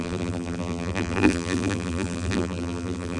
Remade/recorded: remade